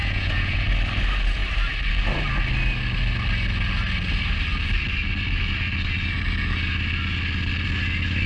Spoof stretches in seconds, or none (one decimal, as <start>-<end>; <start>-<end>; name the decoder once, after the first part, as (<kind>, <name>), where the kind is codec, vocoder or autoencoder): 0.0-0.6 (vocoder, Vocos)